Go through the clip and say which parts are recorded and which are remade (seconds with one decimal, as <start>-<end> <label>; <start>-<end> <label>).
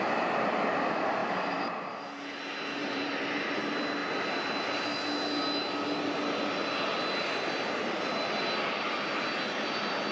0.0-1.2 recorded; 1.2-1.9 remade; 1.9-2.8 recorded; 2.8-3.3 remade; 3.3-10.1 recorded